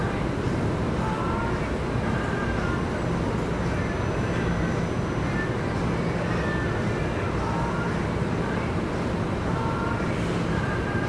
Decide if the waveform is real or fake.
real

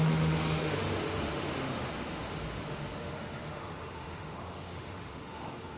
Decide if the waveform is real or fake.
fake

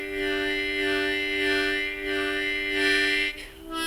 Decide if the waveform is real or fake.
real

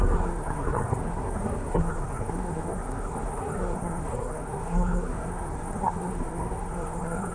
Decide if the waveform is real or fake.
fake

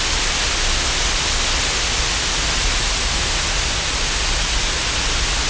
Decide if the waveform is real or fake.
real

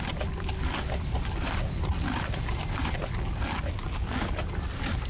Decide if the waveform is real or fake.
real